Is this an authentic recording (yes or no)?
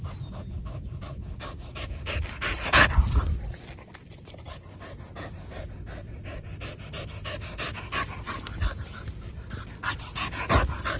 yes